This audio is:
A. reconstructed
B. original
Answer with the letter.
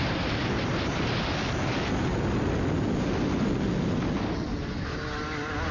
B